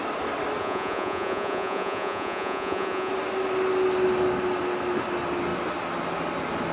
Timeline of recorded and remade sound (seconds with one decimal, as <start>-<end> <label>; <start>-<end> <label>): 0.0-0.6 recorded; 0.6-3.1 remade; 3.1-6.7 recorded